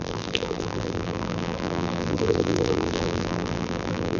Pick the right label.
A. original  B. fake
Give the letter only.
B